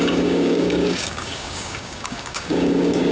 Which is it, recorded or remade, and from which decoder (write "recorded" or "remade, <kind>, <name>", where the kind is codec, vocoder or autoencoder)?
remade, codec, DAC